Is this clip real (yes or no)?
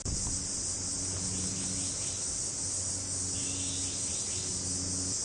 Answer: yes